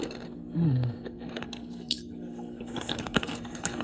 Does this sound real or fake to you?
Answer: fake